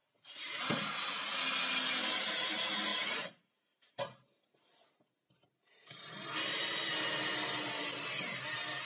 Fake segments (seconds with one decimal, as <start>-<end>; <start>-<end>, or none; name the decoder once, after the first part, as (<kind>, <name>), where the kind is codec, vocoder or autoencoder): 0.0-0.6 (vocoder, Vocos)